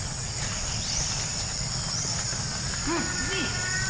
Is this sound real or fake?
real